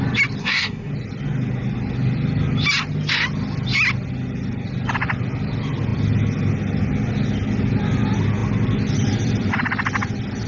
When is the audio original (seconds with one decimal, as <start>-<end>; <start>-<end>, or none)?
0.0-0.4; 0.9-10.5